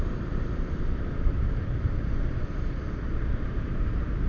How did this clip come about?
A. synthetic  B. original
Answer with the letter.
A